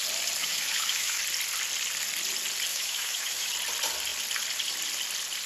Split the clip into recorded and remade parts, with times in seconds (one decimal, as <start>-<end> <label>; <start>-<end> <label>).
0.0-0.4 recorded; 0.4-1.2 remade; 1.2-2.7 recorded; 2.7-3.5 remade; 3.5-5.5 recorded